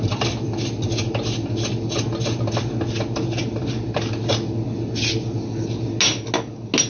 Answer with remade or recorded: recorded